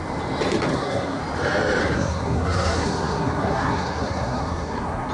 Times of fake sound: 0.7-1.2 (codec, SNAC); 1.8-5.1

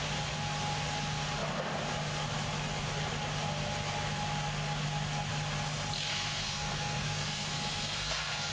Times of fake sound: 6.1-8.5 (codec, SNAC)

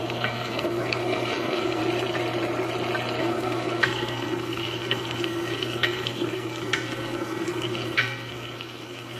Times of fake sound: 0.0-1.8 (codec, SNAC); 3.2-9.2

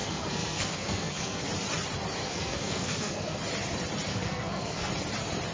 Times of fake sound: 0.0-1.5 (codec, SNAC); 2.2-3.4; 4.1-4.9